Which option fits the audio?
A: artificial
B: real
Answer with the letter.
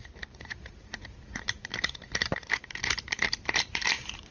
A